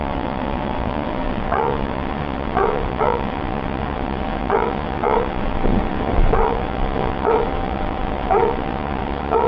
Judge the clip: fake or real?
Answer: fake